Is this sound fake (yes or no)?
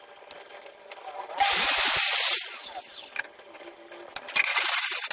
no